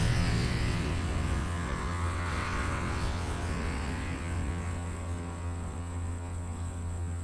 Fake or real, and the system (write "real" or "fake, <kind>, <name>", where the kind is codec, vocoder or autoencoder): fake, vocoder, WaveNeXt